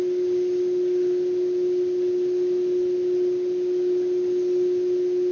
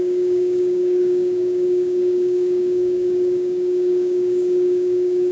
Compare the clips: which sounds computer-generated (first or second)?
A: second